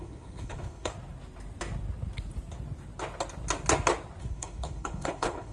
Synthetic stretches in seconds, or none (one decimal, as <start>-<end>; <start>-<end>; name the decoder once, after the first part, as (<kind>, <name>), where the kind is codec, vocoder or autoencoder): 0.0-0.9 (codec, HILCodec); 4.2-5.5